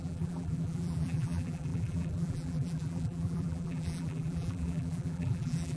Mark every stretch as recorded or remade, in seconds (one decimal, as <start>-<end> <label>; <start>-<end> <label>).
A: 0.0-5.8 remade